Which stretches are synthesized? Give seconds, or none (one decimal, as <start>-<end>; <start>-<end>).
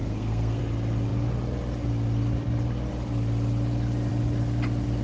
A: 0.0-0.6